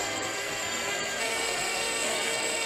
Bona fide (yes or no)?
no